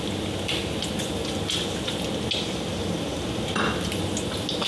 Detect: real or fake real